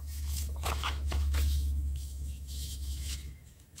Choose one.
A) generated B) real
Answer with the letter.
A